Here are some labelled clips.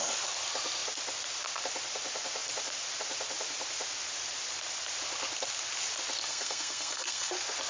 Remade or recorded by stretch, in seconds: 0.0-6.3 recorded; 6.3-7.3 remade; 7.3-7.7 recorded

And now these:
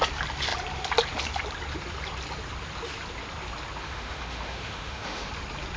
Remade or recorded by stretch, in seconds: 0.0-3.8 recorded; 3.8-5.3 remade; 5.3-5.8 recorded